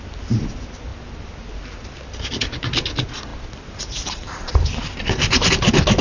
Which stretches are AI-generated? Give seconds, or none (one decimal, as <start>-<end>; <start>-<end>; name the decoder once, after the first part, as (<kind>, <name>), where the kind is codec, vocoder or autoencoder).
none